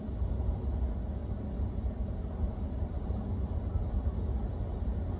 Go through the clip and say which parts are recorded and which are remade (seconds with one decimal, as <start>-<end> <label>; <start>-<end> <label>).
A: 0.0-1.2 recorded; 1.2-3.9 remade; 3.9-5.2 recorded